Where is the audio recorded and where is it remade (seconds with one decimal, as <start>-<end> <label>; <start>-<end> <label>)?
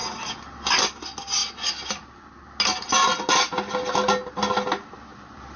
0.0-5.6 recorded